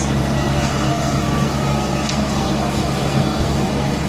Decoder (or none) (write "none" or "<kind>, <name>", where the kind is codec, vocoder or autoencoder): codec, SNAC